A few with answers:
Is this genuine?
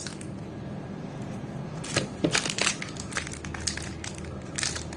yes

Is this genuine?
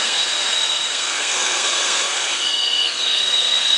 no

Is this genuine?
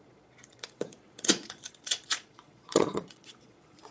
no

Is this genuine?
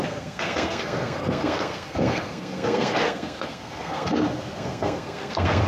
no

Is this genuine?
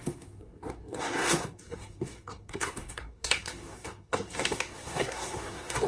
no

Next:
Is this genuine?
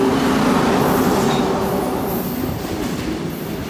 yes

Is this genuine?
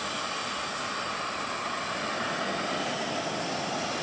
yes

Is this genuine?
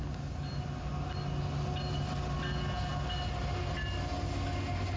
yes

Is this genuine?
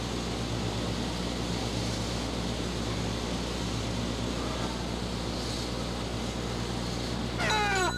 yes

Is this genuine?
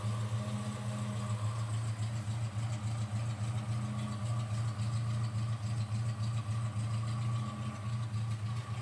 yes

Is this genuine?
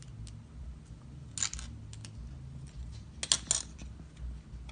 yes